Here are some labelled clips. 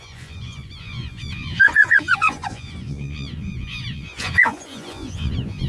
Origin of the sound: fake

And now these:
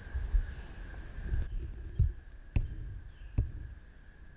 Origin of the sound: real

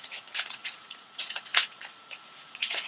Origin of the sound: fake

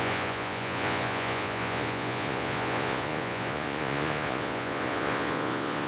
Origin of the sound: fake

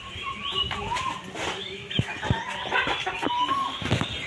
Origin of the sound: real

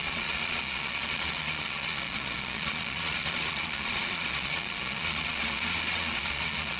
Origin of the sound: fake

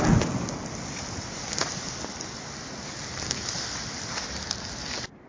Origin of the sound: real